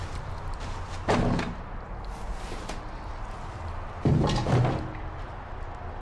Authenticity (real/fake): real